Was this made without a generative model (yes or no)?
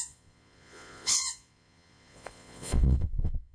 no